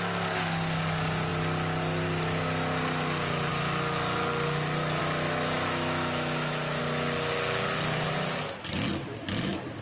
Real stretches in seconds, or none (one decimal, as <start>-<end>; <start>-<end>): 0.0-5.0; 6.8-9.8